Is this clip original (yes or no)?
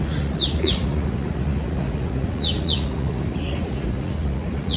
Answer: no